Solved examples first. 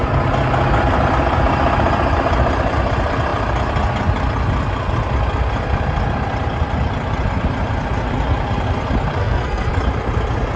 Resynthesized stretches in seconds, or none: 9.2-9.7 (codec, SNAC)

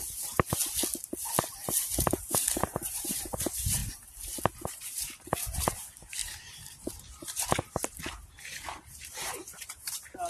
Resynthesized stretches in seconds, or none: 0.0-0.6 (vocoder, BigVGAN v2); 1.8-3.8; 4.4-10.3

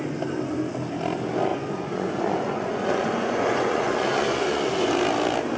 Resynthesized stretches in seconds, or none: 1.5-4.9 (vocoder, Vocos)

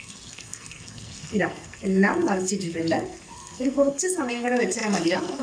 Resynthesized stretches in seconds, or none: 0.0-5.4 (codec, SNAC)

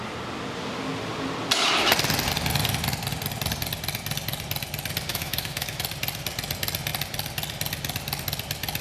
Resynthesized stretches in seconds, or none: 5.1-5.8 (autoencoder, DAC-VAE)

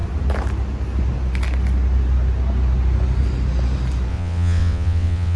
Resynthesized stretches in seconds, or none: 4.1-5.4 (vocoder, WaveNeXt)